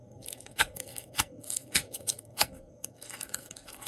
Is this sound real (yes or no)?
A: no